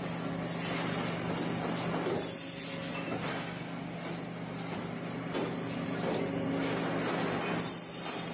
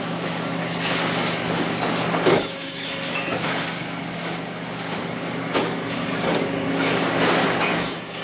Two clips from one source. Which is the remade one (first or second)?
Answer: second